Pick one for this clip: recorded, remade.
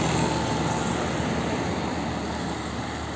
recorded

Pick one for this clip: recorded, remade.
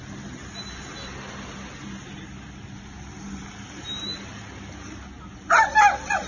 recorded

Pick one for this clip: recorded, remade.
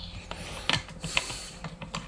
recorded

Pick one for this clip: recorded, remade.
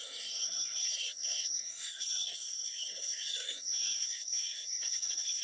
remade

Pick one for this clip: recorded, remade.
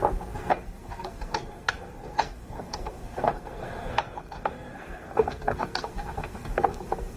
remade